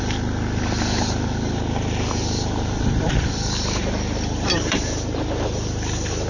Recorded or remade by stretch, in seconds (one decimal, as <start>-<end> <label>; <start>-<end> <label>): 0.0-3.8 remade; 3.8-4.4 recorded; 4.4-6.3 remade